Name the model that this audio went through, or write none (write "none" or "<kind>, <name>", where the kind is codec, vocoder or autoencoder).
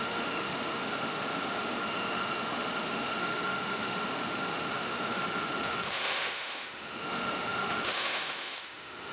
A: autoencoder, DAC-VAE